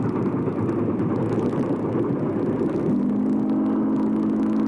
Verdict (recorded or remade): recorded